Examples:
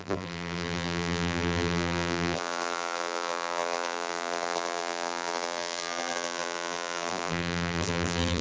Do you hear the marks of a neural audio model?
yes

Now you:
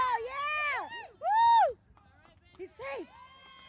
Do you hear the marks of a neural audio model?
no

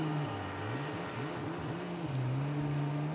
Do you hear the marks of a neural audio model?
no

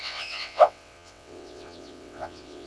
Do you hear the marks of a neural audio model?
yes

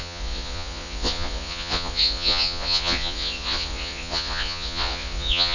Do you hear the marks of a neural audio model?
yes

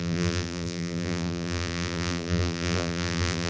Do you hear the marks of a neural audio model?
yes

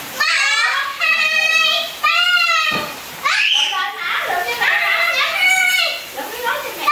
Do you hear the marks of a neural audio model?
yes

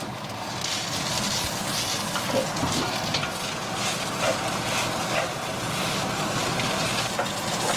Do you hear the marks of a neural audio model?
no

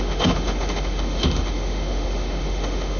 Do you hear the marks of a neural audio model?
yes